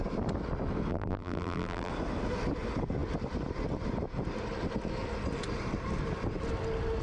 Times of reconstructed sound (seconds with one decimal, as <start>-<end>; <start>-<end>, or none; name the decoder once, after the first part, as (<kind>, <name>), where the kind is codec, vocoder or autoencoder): 0.9-1.9 (vocoder, BigVGAN v2)